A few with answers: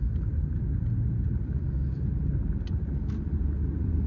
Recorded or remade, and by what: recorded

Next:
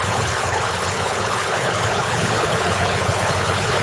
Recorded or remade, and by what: remade, codec, HILCodec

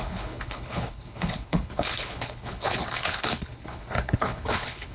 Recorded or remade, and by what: remade, codec, HILCodec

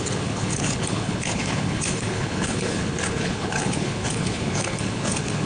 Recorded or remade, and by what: remade, codec, HILCodec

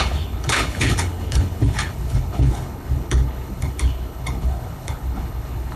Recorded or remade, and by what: remade, codec, HILCodec